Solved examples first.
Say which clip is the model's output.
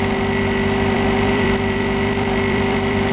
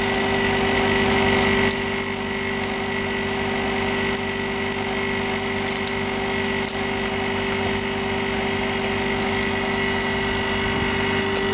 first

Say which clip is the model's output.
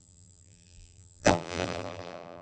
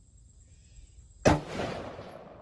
first